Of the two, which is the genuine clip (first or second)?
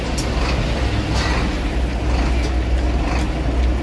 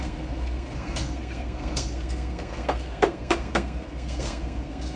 first